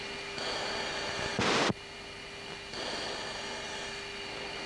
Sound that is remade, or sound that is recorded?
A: recorded